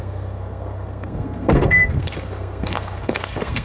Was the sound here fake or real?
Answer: fake